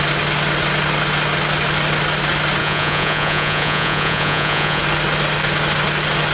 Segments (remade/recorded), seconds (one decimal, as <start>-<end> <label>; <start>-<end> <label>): 0.0-2.6 recorded; 2.6-4.8 remade; 4.8-6.3 recorded